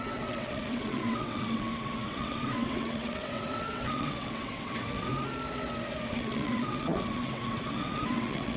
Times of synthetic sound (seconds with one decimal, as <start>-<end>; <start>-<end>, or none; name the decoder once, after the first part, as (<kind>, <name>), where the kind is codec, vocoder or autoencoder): 0.0-5.1 (vocoder, WaveNeXt); 6.1-8.6